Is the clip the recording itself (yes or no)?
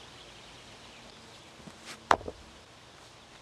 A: no